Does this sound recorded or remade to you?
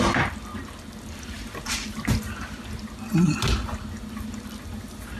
recorded